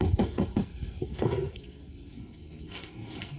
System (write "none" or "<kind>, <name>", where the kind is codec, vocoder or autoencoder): codec, SNAC